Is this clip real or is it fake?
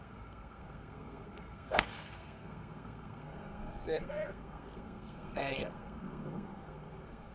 fake